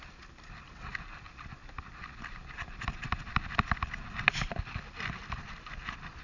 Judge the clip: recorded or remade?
recorded